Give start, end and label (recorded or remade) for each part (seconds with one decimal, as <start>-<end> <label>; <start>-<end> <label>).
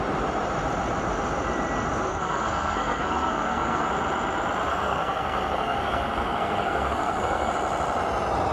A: 0.0-2.1 recorded; 2.1-3.9 remade; 3.9-4.7 recorded; 4.7-7.5 remade; 7.5-8.5 recorded